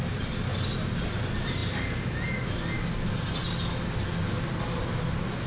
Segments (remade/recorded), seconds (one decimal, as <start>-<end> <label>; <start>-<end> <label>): 0.0-5.5 recorded